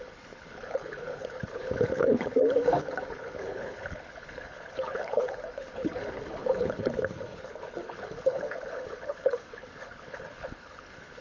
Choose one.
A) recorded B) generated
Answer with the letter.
B